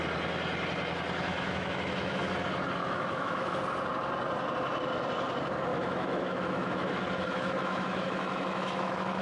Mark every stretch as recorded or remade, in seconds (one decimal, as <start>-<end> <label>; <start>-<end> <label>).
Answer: 0.0-1.3 recorded; 1.3-2.3 remade; 2.3-2.8 recorded; 2.8-3.6 remade; 3.6-5.7 recorded; 5.7-9.2 remade